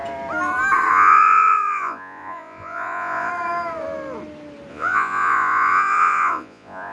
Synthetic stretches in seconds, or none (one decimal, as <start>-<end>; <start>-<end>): 0.9-3.3; 4.7-6.9